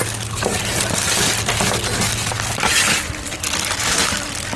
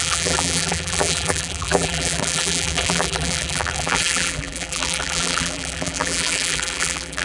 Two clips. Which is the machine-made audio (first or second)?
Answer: second